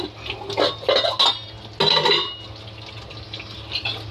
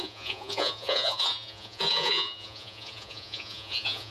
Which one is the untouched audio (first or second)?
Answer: first